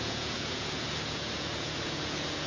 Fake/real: fake